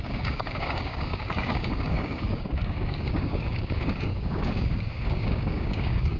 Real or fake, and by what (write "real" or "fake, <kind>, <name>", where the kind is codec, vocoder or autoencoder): fake, codec, DAC